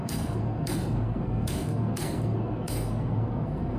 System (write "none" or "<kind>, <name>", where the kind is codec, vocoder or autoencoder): codec, SNAC